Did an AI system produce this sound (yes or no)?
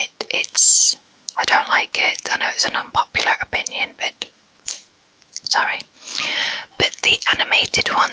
yes